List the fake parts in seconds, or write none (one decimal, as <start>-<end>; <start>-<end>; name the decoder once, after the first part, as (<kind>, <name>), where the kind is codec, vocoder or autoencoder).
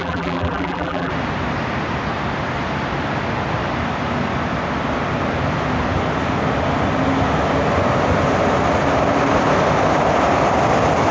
0.0-1.1 (vocoder, BigVGAN v2)